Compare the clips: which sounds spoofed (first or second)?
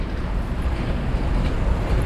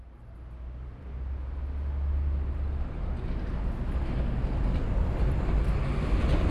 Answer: first